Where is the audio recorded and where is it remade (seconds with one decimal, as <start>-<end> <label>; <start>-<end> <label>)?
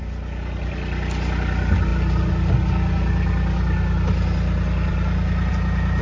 0.0-6.0 recorded